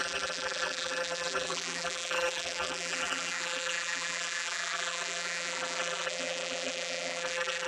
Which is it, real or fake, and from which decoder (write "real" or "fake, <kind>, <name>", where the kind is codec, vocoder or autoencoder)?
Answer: fake, vocoder, BigVGAN v2